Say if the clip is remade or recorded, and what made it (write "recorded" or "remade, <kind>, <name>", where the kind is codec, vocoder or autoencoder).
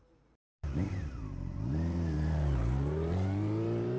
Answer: remade, vocoder, BigVGAN v2